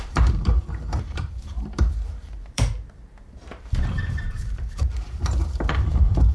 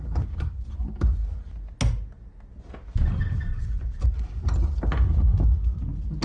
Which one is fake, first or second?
first